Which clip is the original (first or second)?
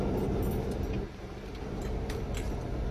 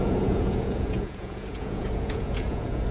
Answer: first